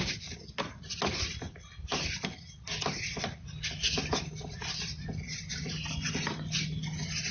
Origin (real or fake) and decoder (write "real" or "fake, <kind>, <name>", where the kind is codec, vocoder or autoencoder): real